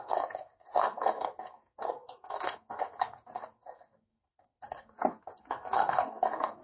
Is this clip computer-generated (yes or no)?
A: yes